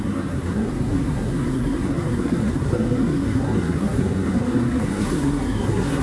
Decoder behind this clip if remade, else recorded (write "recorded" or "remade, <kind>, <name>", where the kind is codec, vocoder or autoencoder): remade, codec, SNAC